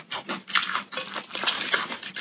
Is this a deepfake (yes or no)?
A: yes